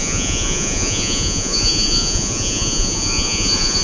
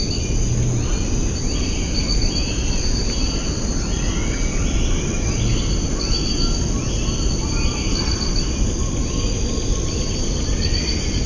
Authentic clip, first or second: second